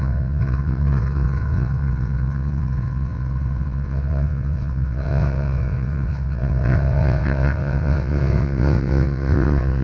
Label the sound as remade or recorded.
remade